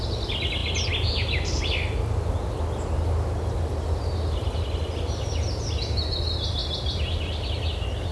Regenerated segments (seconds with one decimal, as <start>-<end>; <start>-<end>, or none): none